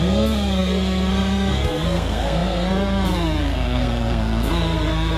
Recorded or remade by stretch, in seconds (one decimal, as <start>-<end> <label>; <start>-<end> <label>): 0.0-5.2 remade